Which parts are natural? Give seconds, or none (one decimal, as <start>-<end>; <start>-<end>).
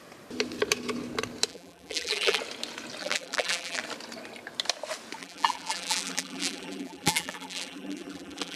0.0-1.5; 2.4-3.0; 3.8-5.2